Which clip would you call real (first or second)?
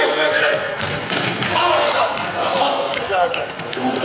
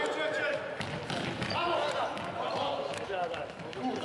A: second